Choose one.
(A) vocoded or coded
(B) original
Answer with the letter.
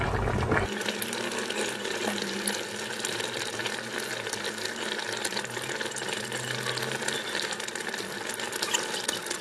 B